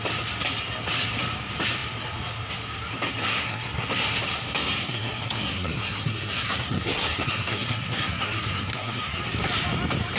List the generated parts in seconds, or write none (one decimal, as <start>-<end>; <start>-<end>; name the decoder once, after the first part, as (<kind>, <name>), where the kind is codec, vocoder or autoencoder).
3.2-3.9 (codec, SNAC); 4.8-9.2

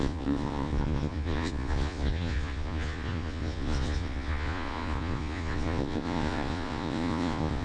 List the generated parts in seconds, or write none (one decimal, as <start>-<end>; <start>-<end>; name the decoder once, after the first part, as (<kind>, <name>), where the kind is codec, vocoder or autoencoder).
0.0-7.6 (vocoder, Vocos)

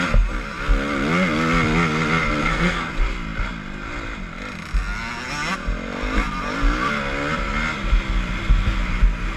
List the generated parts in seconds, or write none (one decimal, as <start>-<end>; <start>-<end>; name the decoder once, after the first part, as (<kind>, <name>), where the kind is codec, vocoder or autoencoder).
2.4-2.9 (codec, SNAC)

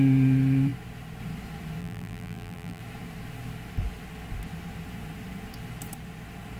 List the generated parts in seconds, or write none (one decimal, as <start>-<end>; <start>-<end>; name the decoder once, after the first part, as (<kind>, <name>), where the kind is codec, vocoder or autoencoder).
1.8-2.8 (vocoder, BigVGAN v2)

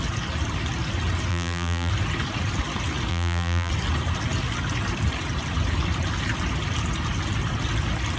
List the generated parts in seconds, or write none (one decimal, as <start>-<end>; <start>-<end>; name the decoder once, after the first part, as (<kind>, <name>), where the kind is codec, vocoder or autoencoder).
1.3-1.9 (vocoder, BigVGAN v2); 3.1-3.7